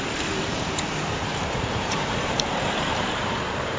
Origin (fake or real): fake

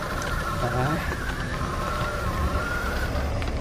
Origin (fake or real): fake